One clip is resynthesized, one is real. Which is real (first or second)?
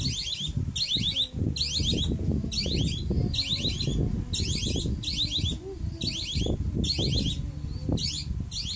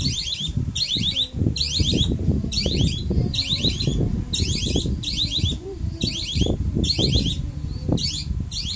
first